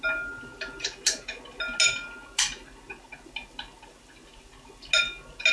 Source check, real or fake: real